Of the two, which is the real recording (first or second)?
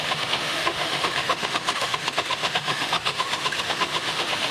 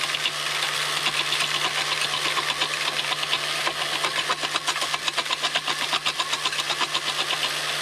second